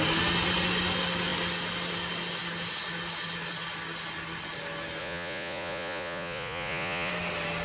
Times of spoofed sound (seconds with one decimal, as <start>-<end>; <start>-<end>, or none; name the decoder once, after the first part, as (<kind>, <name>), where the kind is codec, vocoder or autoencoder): 5.0-7.1 (vocoder, Vocos)